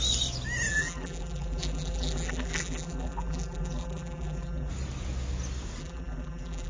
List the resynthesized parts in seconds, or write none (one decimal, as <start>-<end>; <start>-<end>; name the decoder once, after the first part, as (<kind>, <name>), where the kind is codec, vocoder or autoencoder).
0.7-4.7 (vocoder, BigVGAN v2); 5.8-6.7